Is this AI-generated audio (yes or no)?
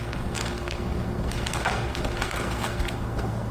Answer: yes